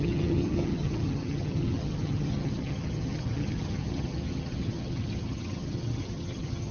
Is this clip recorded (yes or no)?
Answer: no